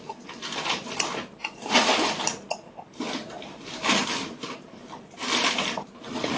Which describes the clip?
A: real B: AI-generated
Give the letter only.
A